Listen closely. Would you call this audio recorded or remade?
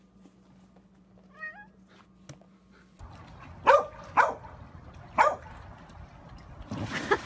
recorded